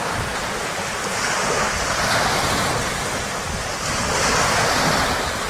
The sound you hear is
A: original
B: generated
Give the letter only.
A